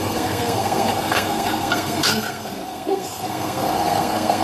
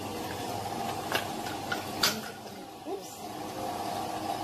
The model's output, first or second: first